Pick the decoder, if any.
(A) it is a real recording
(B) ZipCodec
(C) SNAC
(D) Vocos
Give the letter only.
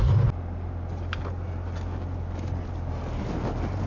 A